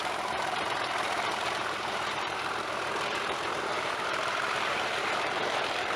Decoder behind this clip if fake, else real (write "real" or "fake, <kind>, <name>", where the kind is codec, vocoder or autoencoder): fake, vocoder, BigVGAN v2